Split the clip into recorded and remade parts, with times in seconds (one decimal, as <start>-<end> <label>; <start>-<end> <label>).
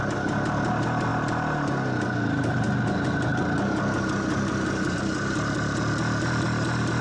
0.0-7.0 recorded